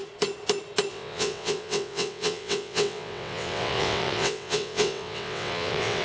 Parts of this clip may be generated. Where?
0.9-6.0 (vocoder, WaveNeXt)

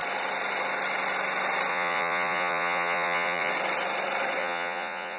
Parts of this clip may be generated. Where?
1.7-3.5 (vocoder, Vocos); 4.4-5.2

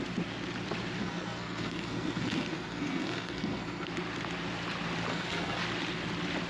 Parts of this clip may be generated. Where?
1.0-3.9 (codec, SNAC); 5.1-5.6

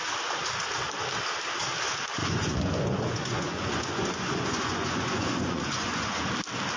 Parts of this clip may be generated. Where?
2.2-6.2 (vocoder, Vocos)